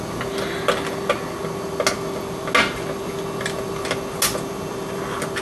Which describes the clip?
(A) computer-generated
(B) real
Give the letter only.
B